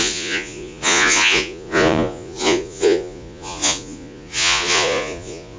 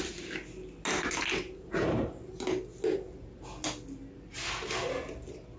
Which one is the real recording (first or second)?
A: second